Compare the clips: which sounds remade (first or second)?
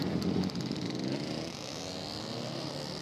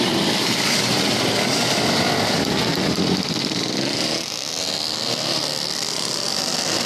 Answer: second